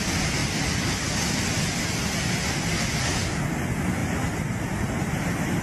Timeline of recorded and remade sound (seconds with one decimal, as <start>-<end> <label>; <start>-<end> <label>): 0.0-4.0 recorded; 4.0-5.6 remade